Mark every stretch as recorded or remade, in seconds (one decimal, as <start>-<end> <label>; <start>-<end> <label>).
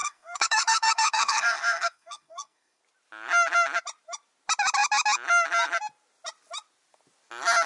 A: 0.0-2.8 remade; 2.8-7.7 recorded